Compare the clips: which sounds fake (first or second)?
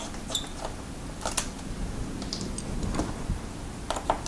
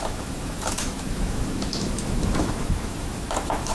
second